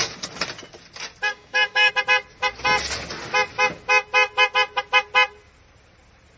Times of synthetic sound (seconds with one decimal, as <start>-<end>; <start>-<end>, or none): 1.3-1.9